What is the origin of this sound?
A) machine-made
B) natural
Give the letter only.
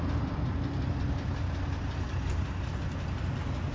B